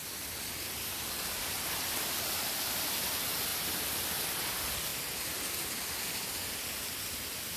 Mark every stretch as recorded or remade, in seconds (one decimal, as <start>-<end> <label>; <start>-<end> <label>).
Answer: 0.0-7.6 recorded